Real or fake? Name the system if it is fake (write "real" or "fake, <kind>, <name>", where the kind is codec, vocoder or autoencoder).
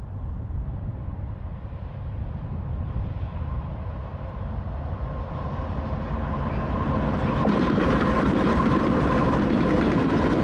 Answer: real